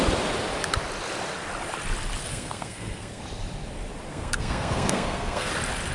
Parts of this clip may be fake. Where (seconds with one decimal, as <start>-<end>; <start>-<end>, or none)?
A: 2.3-3.2; 4.1-5.5